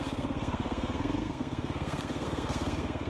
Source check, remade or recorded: remade